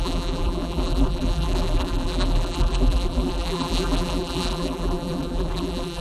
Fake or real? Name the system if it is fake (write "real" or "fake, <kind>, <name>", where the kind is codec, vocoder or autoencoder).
fake, vocoder, BigVGAN v2